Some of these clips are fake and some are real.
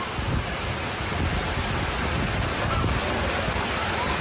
real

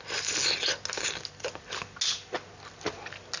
real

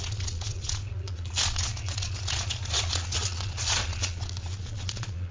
fake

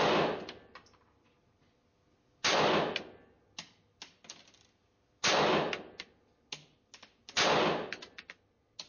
real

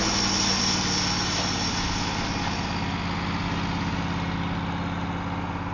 real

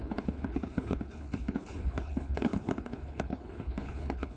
fake